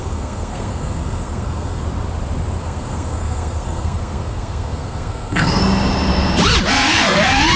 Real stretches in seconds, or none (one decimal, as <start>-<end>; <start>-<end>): 1.8-2.6; 5.6-6.7

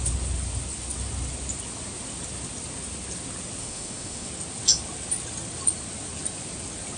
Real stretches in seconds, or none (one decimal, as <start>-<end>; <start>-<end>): 0.0-3.6; 4.3-7.0

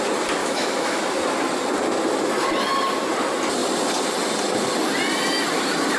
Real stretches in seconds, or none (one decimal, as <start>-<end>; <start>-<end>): 0.0-0.4; 1.0-6.0

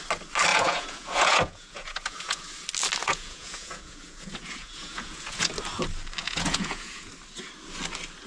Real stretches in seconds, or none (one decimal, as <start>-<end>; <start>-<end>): 0.0-0.5; 2.4-3.0; 5.5-6.2; 7.1-8.3

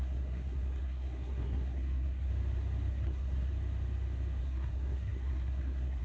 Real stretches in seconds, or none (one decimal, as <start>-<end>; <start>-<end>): 2.3-2.9; 3.5-4.4